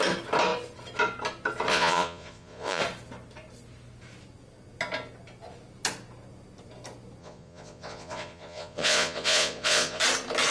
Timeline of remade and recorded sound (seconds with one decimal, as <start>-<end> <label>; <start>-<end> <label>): 0.0-1.7 recorded; 1.7-2.8 remade; 2.8-7.2 recorded; 7.2-10.0 remade; 10.0-10.5 recorded